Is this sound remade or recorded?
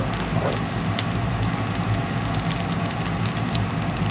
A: recorded